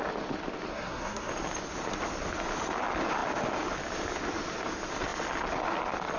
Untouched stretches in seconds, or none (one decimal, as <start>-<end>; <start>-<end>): 0.0-0.7; 1.3-6.2